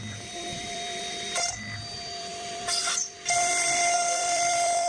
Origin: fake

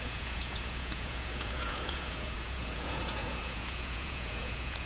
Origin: fake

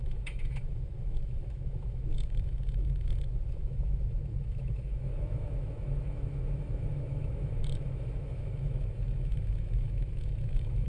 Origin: fake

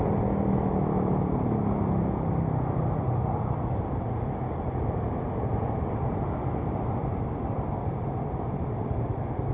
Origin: real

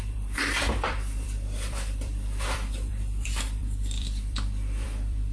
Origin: fake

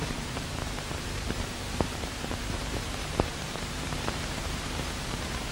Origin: fake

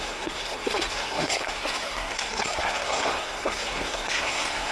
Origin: fake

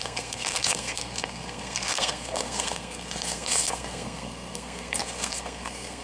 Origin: fake